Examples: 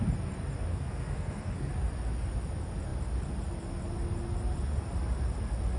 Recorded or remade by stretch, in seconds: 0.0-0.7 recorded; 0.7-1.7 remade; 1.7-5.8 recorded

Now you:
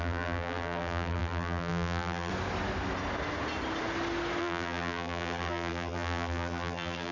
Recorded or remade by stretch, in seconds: 0.0-2.3 remade; 2.3-4.4 recorded; 4.4-7.1 remade